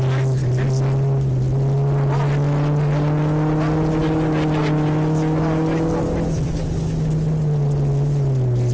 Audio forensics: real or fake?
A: real